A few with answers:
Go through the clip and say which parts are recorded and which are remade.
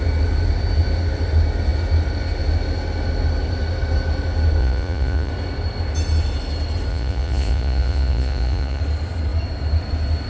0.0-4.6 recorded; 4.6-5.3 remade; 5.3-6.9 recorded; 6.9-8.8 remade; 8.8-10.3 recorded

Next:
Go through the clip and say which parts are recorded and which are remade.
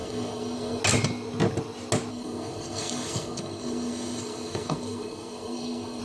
0.0-0.8 remade; 0.8-2.1 recorded; 2.1-6.0 remade